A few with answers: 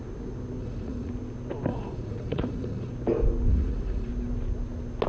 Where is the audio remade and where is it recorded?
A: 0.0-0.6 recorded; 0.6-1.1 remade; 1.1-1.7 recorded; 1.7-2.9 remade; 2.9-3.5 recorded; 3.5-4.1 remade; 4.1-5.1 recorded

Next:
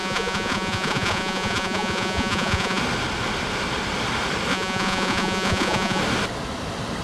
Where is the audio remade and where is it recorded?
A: 0.0-2.8 remade; 2.8-4.5 recorded; 4.5-6.0 remade; 6.0-7.0 recorded

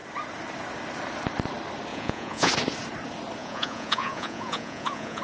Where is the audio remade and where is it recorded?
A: 0.0-1.9 recorded; 1.9-2.5 remade; 2.5-3.4 recorded; 3.4-5.2 remade

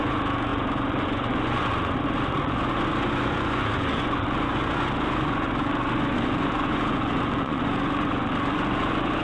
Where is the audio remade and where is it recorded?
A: 0.0-9.2 remade

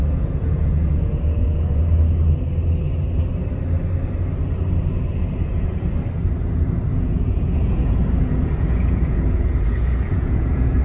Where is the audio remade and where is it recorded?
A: 0.0-1.8 remade; 1.8-6.9 recorded; 6.9-10.8 remade

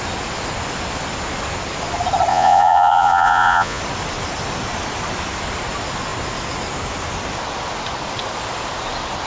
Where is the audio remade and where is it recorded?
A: 0.0-2.3 recorded; 2.3-3.8 remade; 3.8-9.3 recorded

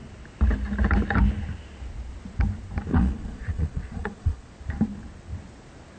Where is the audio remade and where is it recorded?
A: 0.0-2.9 recorded; 2.9-4.5 remade; 4.5-6.0 recorded